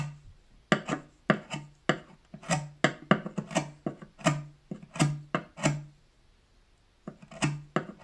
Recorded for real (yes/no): yes